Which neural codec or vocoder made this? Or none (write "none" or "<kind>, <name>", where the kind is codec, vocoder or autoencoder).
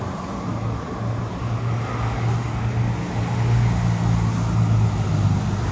none